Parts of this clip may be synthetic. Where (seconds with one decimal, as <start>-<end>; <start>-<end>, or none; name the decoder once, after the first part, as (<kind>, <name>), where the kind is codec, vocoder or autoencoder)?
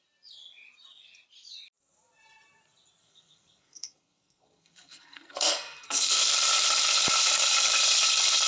3.0-6.3 (codec, SNAC)